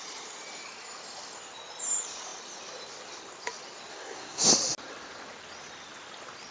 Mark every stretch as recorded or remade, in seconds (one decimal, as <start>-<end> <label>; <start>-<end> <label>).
0.0-3.9 recorded; 3.9-4.5 remade; 4.5-6.5 recorded